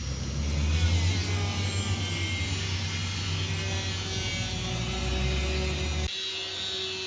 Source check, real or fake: real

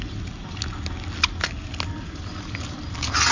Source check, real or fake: real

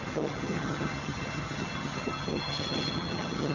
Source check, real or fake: fake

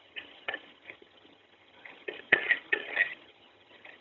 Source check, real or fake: fake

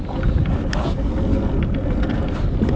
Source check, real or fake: real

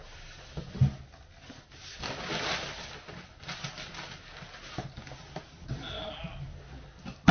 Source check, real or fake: real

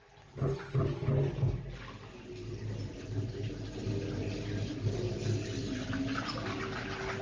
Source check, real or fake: real